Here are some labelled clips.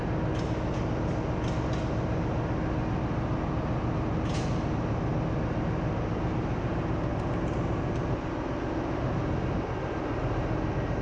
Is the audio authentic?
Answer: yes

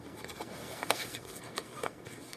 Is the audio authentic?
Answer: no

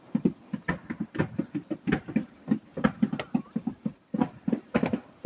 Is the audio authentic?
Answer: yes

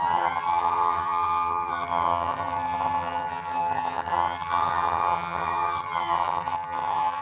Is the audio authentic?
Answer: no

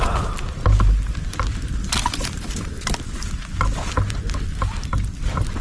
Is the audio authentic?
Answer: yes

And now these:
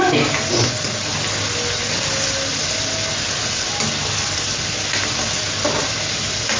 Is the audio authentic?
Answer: yes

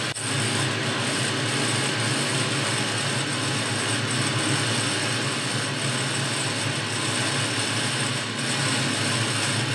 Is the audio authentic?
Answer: yes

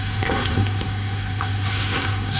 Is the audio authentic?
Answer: no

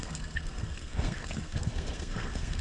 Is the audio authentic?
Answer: no